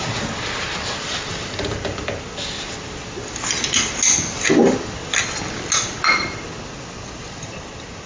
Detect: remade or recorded recorded